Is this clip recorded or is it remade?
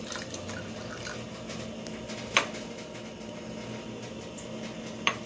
recorded